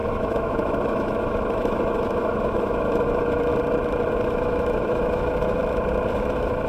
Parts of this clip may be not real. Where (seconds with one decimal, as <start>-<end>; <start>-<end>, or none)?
0.0-3.5; 4.1-5.6; 6.1-6.7